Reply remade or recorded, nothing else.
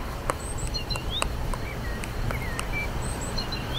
remade